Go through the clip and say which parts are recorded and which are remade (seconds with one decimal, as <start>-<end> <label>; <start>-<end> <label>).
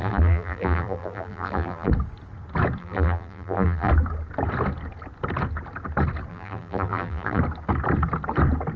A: 0.0-1.9 remade; 1.9-2.8 recorded; 2.8-3.9 remade; 3.9-6.3 recorded; 6.3-7.4 remade; 7.4-8.8 recorded